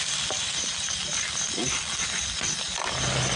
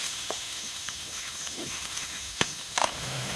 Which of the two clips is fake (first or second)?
second